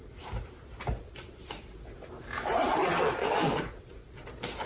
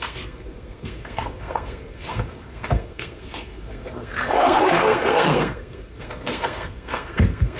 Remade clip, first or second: second